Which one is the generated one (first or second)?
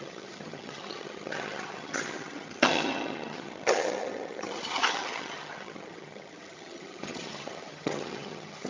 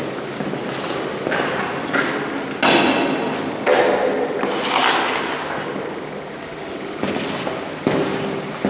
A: first